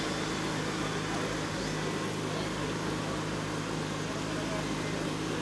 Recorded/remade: recorded